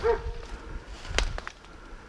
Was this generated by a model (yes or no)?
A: no